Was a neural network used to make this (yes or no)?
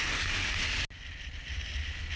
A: no